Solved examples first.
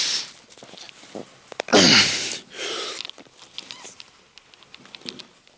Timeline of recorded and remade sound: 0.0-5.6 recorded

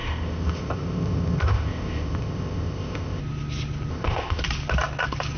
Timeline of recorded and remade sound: 0.0-3.2 remade; 3.2-3.9 recorded; 3.9-4.4 remade; 4.4-5.4 recorded

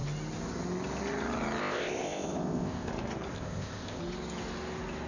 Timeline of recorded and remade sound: 0.0-1.6 recorded; 1.6-2.9 remade; 2.9-3.3 recorded; 3.3-4.0 remade; 4.0-5.1 recorded

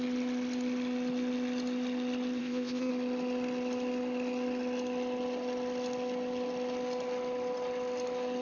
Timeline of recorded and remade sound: 0.0-2.4 recorded; 2.4-2.9 remade; 2.9-8.4 recorded